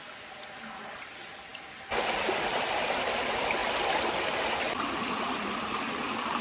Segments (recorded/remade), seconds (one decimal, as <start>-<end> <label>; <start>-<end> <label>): 0.0-6.4 recorded